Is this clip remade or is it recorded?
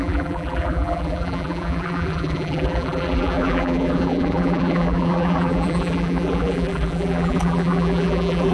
remade